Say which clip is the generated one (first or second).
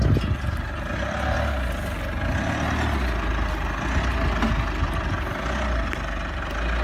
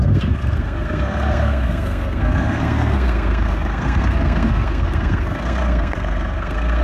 second